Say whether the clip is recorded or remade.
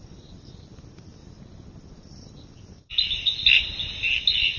recorded